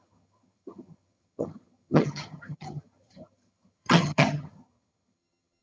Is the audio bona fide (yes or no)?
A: no